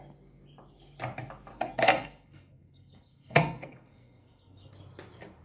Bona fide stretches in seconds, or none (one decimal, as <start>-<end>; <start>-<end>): 0.0-1.5; 4.7-5.4